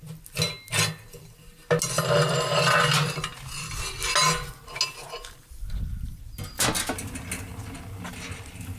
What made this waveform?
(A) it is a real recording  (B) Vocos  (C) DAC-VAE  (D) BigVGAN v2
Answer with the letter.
A